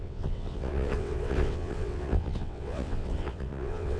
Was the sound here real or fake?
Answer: fake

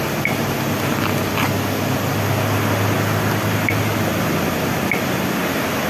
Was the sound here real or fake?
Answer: real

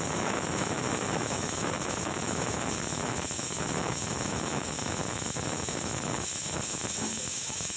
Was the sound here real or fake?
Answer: fake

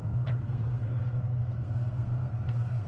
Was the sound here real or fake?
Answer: fake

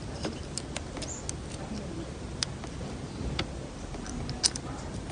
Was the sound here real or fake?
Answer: real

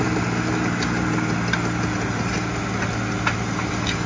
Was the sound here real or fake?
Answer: real